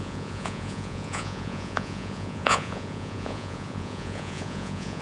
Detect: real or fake fake